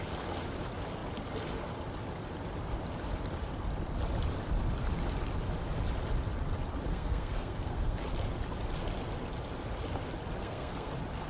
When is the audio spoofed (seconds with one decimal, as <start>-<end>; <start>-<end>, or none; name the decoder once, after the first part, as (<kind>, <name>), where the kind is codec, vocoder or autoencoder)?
6.9-8.0 (codec, SNAC); 10.4-10.9